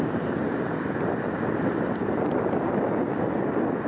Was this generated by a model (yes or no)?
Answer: no